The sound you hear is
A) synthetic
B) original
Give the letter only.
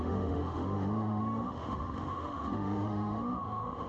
A